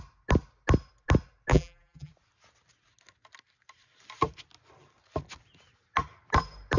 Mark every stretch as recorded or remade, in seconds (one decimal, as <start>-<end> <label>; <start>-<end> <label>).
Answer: 0.0-1.5 recorded; 1.5-2.1 remade; 2.1-6.8 recorded